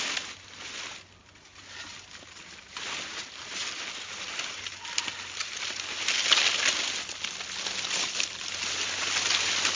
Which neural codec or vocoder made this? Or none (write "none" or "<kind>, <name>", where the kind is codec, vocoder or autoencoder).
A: none